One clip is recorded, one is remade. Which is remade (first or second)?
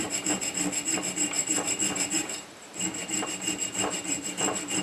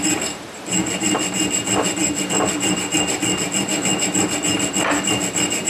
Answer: first